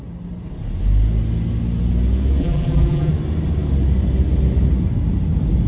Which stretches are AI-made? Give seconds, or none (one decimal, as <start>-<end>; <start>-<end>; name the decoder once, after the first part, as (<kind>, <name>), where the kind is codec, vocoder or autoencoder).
2.4-3.1 (vocoder, BigVGAN v2)